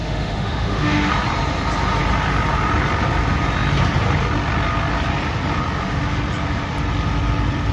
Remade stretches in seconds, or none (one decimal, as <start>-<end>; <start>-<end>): 0.0-1.1